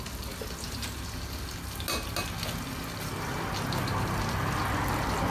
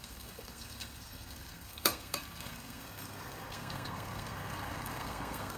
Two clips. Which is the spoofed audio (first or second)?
second